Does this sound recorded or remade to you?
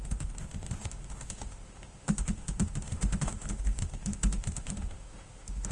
remade